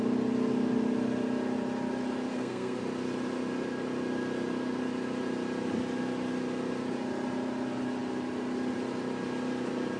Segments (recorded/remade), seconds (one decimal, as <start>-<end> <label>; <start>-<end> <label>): 0.0-2.3 recorded; 2.3-2.8 remade; 2.8-10.0 recorded